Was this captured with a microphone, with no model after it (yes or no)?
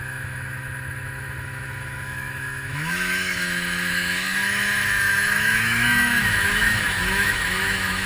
no